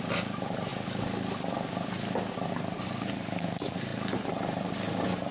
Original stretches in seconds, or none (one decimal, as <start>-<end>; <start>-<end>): 0.7-2.5